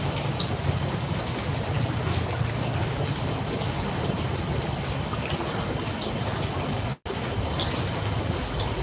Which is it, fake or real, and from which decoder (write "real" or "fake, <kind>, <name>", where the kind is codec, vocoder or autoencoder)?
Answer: real